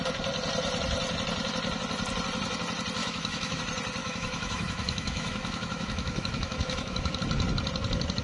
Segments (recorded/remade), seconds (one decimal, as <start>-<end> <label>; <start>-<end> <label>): 0.0-3.0 recorded; 3.0-3.6 remade; 3.6-4.0 recorded; 4.0-7.2 remade; 7.2-8.2 recorded